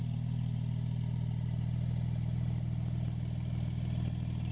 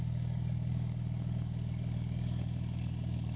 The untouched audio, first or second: first